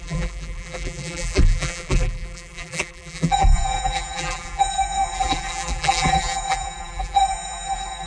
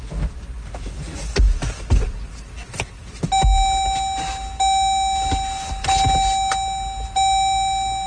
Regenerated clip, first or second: first